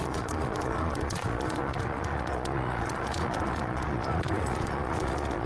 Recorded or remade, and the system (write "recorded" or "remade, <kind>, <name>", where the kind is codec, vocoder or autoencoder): remade, vocoder, Vocos